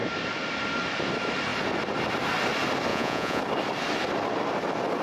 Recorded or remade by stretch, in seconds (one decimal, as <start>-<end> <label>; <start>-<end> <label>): 0.0-2.9 recorded; 2.9-3.4 remade; 3.4-5.0 recorded